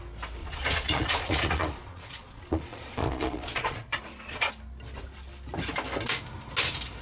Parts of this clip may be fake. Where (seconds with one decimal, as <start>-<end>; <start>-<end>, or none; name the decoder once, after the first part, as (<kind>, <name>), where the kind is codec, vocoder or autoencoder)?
0.4-4.5 (vocoder, Vocos)